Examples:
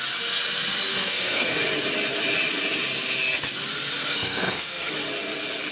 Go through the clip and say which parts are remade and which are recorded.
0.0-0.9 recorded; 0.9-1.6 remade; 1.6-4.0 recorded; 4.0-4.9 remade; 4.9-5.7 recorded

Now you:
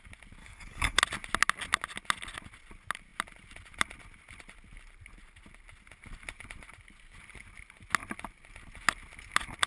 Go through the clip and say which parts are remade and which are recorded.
0.0-0.4 recorded; 0.4-1.0 remade; 1.0-9.7 recorded

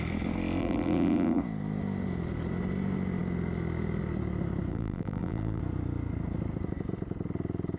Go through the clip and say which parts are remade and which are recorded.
0.0-0.6 recorded; 0.6-1.4 remade; 1.4-4.7 recorded; 4.7-5.6 remade; 5.6-7.8 recorded

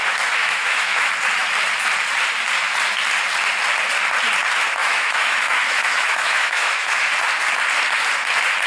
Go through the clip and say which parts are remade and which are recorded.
0.0-0.4 recorded; 0.4-1.1 remade; 1.1-4.8 recorded; 4.8-7.1 remade; 7.1-8.7 recorded